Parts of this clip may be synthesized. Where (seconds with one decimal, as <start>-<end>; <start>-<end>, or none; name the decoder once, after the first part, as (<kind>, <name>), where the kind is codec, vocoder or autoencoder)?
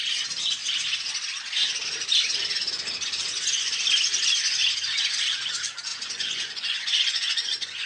5.9-7.9 (vocoder, Vocos)